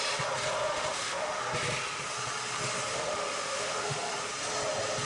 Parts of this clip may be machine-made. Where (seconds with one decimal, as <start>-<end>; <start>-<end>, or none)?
0.7-1.4; 2.9-4.1